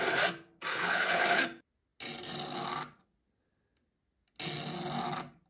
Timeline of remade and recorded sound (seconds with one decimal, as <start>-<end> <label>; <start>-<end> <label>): 0.0-0.7 recorded; 0.7-1.4 remade; 1.4-5.5 recorded